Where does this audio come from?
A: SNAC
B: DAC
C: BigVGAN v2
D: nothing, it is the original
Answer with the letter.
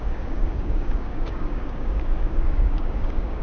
B